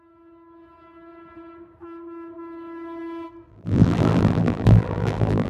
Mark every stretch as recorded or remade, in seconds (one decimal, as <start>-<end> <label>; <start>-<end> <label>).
0.0-3.5 recorded; 3.5-5.5 remade